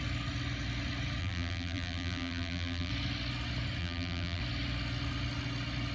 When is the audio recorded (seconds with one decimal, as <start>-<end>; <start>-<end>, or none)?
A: 0.0-1.2; 2.9-3.8; 4.4-5.9